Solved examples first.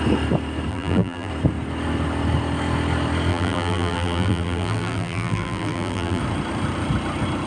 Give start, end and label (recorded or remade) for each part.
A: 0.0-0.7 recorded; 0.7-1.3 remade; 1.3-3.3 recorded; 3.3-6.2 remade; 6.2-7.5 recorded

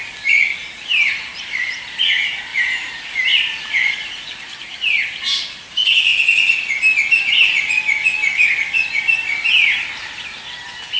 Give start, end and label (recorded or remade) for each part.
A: 0.0-0.6 recorded; 0.6-1.9 remade; 1.9-2.5 recorded; 2.5-5.2 remade; 5.2-11.0 recorded

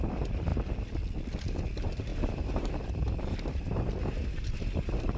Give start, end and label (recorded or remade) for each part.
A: 0.0-0.5 remade; 0.5-1.4 recorded; 1.4-5.2 remade

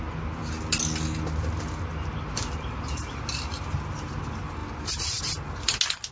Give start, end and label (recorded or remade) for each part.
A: 0.0-0.4 recorded; 0.4-4.1 remade; 4.1-4.6 recorded; 4.6-5.2 remade; 5.2-6.1 recorded

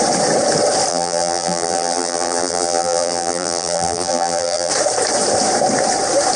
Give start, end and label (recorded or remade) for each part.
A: 0.0-0.9 recorded; 0.9-4.7 remade; 4.7-6.4 recorded

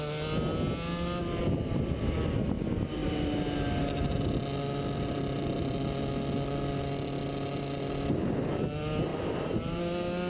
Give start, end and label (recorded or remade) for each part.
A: 0.0-9.1 recorded; 9.1-9.8 remade; 9.8-10.3 recorded

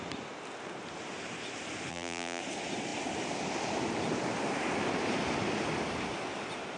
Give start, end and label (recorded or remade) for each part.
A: 0.0-1.9 recorded; 1.9-2.4 remade; 2.4-6.8 recorded